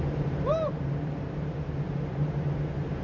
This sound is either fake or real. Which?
real